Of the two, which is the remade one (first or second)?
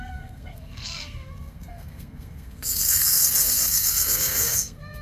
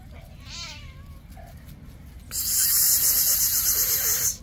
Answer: first